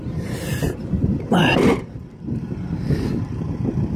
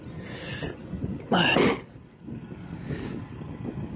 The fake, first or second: first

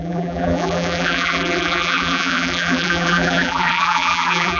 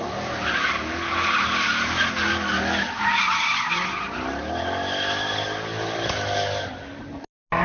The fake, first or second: first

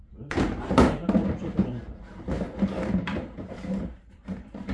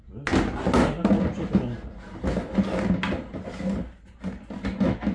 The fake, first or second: first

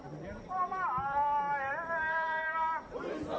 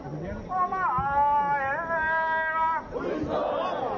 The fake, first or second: first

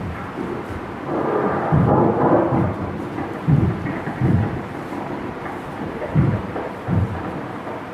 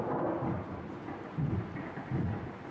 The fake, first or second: first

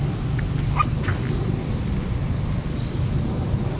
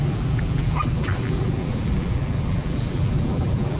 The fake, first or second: second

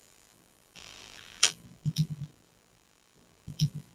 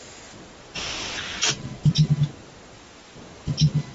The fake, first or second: first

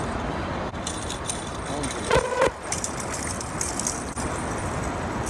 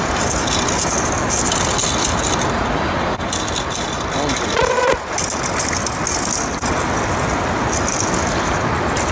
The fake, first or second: first